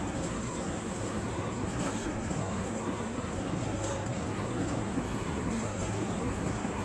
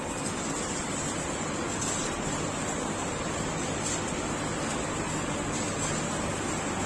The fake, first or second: first